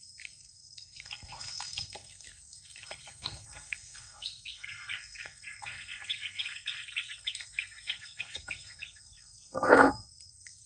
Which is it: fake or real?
fake